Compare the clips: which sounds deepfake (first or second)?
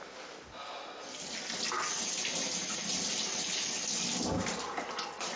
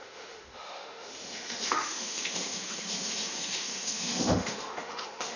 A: second